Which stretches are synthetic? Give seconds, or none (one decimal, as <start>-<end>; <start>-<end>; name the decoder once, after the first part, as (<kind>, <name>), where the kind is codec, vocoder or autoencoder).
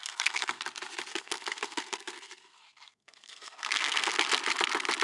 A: 0.0-0.6 (codec, SNAC); 1.1-4.1